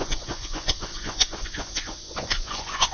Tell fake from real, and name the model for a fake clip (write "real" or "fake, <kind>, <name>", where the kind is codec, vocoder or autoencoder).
fake, vocoder, Vocos